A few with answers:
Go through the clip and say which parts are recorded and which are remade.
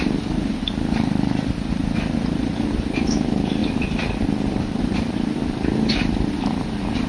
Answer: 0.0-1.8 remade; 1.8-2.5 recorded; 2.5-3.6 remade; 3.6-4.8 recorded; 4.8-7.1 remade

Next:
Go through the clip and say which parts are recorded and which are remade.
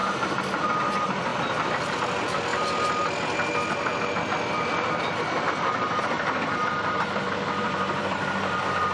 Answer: 0.0-2.5 remade; 2.5-6.0 recorded; 6.0-8.9 remade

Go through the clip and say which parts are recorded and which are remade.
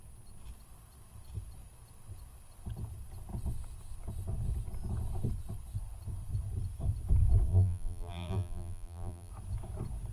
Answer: 0.0-7.5 recorded; 7.5-9.3 remade; 9.3-10.1 recorded